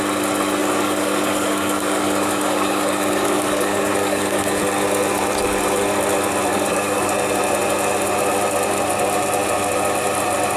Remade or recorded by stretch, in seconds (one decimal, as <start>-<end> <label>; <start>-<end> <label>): 0.0-0.6 recorded; 0.6-4.6 remade; 4.6-6.5 recorded; 6.5-7.1 remade; 7.1-10.6 recorded